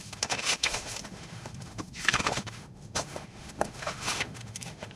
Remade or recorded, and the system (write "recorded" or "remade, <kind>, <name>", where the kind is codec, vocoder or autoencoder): remade, autoencoder, DAC-VAE